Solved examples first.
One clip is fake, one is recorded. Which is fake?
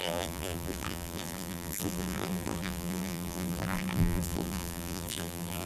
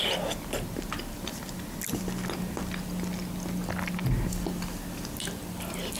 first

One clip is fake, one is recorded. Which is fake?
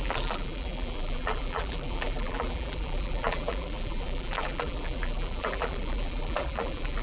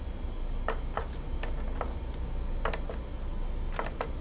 first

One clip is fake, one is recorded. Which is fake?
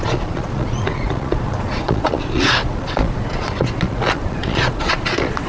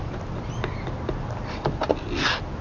first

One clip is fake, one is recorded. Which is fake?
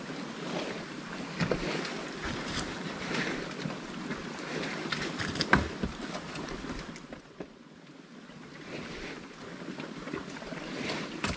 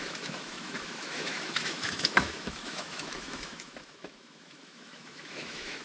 second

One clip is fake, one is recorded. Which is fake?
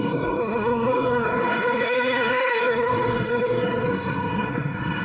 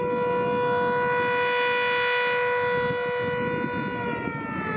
first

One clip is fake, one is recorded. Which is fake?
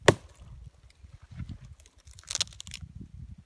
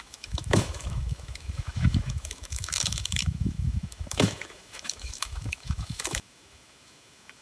second